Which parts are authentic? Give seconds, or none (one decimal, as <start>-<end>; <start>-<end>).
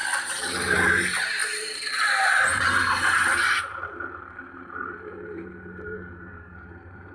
none